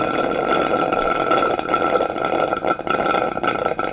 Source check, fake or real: real